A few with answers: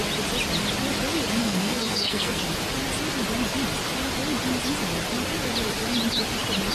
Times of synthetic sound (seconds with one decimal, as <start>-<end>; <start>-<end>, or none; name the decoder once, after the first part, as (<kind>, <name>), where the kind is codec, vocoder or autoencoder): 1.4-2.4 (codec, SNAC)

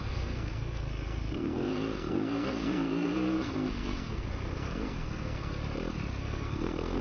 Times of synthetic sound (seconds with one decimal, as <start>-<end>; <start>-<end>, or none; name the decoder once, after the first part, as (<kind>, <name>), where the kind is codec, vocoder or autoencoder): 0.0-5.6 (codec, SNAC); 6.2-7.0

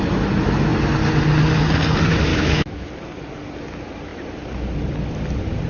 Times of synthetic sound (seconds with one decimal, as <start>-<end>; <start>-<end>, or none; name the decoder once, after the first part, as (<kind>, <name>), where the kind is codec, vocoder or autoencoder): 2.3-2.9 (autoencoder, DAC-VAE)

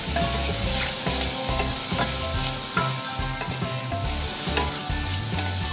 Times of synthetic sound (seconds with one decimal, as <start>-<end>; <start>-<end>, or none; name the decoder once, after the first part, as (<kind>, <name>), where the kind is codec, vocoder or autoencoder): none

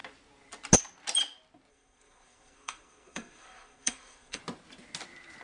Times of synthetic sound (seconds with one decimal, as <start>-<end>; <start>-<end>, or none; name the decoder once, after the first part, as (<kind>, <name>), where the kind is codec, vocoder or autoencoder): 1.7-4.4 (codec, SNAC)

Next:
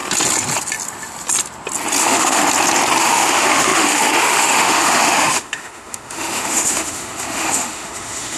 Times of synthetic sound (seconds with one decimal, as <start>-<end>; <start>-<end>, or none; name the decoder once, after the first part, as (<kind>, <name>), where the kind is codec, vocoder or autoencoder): 2.0-2.4 (autoencoder, DAC-VAE); 3.0-8.4